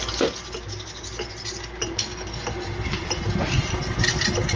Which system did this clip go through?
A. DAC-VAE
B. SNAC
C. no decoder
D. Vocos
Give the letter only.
C